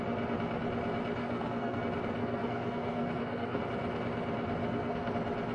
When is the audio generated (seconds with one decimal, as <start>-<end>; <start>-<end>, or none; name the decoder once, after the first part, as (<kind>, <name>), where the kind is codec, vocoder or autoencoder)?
1.2-1.8 (codec, SNAC); 2.2-3.6; 4.6-5.1